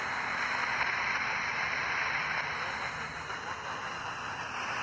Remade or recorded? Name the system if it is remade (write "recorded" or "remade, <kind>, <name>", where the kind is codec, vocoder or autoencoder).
recorded